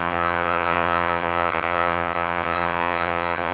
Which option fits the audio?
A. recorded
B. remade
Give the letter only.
B